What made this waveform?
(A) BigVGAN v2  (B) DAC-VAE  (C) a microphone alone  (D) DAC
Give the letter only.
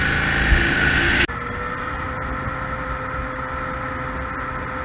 C